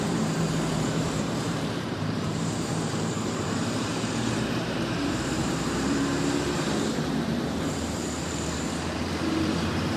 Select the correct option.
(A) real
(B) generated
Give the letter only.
B